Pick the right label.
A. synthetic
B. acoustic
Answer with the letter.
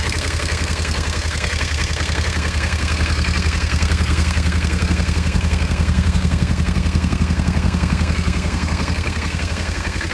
A